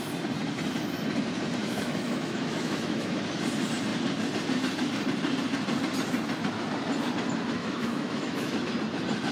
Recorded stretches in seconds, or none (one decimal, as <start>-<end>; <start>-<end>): 0.0-1.6; 3.2-7.6; 8.7-9.3